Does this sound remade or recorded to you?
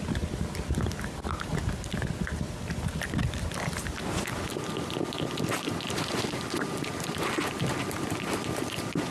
recorded